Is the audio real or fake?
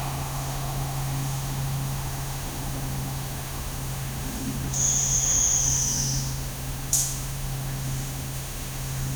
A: fake